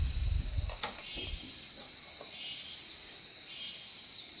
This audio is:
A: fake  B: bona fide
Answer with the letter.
B